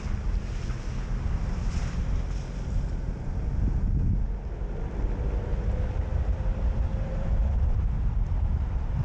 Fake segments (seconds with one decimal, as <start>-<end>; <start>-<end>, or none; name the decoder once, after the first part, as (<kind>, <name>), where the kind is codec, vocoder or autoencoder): 6.5-9.0 (vocoder, BigVGAN v2)